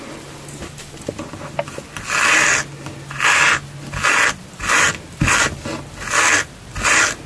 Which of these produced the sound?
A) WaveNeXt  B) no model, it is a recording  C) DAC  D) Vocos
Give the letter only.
B